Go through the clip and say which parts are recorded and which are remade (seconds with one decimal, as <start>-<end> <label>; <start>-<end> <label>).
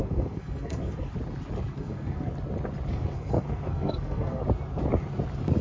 0.0-1.1 remade; 1.1-1.8 recorded; 1.8-2.3 remade; 2.3-2.9 recorded; 2.9-4.4 remade; 4.4-5.6 recorded